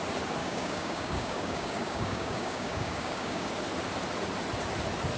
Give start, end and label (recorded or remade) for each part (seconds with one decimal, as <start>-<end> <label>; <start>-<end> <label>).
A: 0.0-0.4 recorded; 0.4-3.5 remade; 3.5-5.2 recorded